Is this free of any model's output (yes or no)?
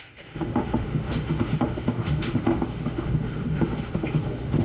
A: no